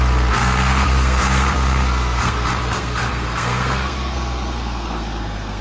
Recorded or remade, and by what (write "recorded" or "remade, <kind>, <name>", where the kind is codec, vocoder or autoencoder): remade, codec, SNAC